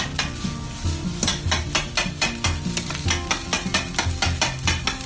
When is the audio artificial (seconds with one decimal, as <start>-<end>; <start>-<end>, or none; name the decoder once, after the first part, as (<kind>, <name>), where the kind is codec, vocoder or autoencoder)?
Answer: none